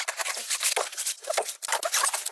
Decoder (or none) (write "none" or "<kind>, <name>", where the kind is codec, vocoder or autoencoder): none